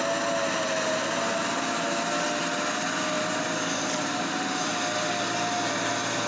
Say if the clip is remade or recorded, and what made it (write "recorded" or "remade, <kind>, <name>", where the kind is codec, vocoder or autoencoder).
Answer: recorded